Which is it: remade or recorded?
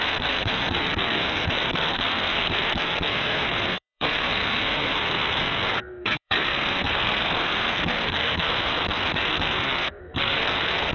remade